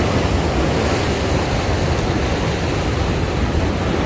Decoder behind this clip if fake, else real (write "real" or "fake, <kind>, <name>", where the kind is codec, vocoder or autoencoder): real